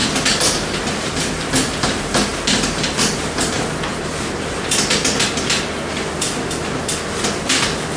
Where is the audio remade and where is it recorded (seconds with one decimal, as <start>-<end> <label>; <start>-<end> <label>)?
0.0-8.0 recorded